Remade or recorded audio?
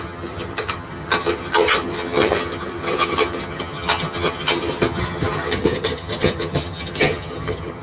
remade